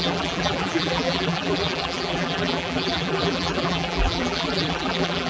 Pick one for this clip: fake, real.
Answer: fake